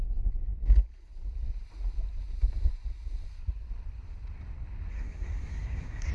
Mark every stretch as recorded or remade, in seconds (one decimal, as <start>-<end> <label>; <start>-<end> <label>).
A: 0.0-4.9 recorded; 4.9-6.1 remade